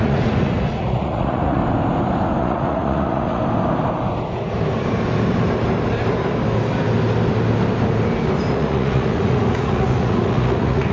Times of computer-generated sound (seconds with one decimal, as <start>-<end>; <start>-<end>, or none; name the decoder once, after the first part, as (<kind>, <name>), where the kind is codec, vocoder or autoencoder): 0.0-1.6 (vocoder, Vocos); 2.4-3.4; 8.5-10.9